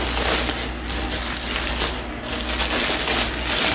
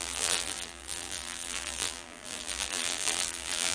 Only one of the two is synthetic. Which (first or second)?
second